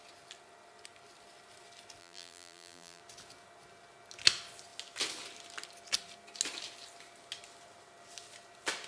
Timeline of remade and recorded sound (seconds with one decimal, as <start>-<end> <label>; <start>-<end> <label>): 0.0-2.0 recorded; 2.0-3.0 remade; 3.0-8.9 recorded